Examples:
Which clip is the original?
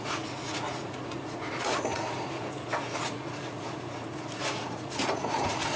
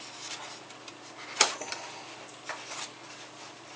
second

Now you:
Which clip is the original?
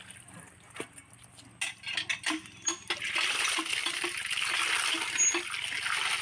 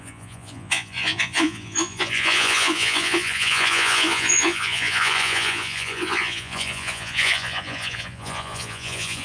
first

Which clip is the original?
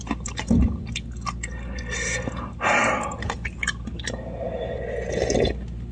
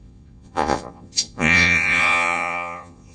first